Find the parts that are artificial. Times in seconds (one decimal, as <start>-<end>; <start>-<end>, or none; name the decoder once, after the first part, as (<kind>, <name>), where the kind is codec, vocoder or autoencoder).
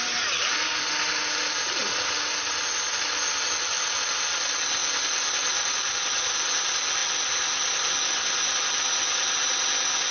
none